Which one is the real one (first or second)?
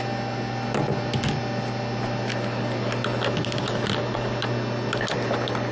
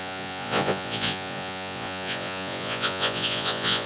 first